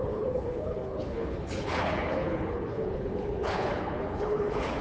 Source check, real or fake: fake